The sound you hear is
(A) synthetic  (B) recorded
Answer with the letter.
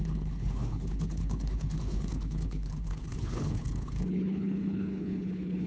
A